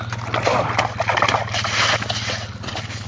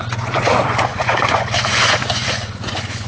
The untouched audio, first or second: first